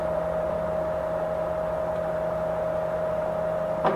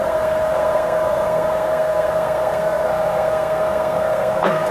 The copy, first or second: second